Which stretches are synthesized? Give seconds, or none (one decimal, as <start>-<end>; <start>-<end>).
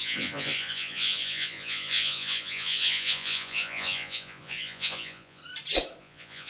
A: 0.0-5.4; 6.0-6.5